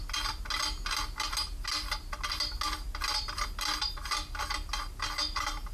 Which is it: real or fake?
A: real